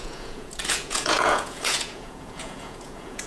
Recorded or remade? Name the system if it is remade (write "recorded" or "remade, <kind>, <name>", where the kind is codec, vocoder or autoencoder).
remade, vocoder, Vocos